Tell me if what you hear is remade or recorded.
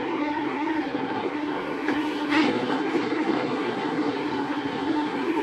remade